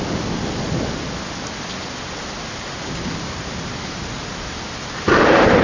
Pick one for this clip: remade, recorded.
recorded